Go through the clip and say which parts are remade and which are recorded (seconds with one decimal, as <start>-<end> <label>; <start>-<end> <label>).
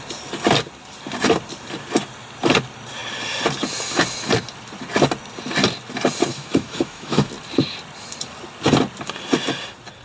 0.0-6.3 recorded; 6.3-7.3 remade; 7.3-10.0 recorded